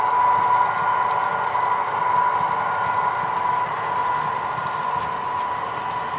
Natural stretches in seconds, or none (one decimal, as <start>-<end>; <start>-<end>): 0.0-6.2